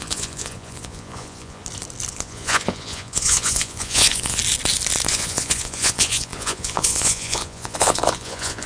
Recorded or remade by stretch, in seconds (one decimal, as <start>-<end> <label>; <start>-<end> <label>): 0.0-1.6 remade; 1.6-2.1 recorded; 2.1-4.4 remade; 4.4-5.1 recorded; 5.1-8.7 remade